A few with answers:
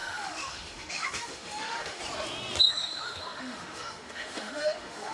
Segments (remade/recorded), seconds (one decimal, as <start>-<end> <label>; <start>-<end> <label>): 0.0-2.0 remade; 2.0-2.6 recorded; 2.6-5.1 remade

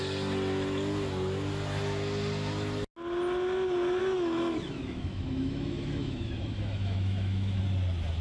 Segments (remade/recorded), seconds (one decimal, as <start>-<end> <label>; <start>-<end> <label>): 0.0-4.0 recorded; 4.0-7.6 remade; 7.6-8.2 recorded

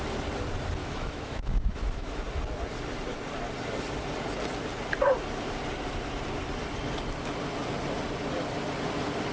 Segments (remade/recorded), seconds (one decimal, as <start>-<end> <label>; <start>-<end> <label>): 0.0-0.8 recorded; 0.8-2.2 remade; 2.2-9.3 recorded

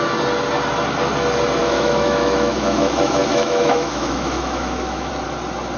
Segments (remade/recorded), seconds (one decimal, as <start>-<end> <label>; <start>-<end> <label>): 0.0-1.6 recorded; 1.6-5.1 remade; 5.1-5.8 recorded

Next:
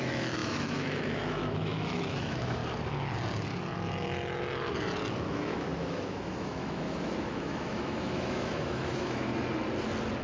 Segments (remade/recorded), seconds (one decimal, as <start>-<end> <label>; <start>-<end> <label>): 0.0-2.6 remade; 2.6-5.3 recorded; 5.3-9.3 remade; 9.3-10.2 recorded